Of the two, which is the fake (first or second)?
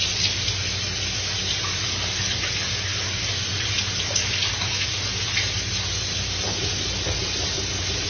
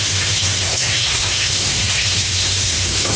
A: second